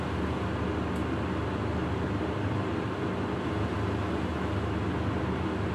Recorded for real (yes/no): yes